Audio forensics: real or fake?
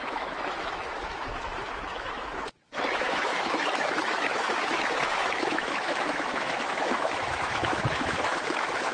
fake